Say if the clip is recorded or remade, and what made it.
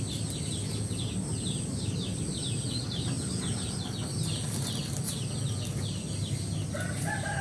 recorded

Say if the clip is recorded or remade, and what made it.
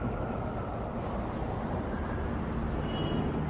recorded